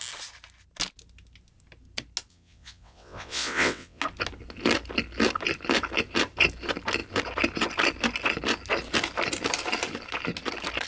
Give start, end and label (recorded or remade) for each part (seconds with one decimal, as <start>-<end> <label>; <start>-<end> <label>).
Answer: 0.0-2.3 recorded; 2.3-4.0 remade; 4.0-10.9 recorded